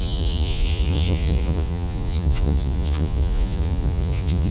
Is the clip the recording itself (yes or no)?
no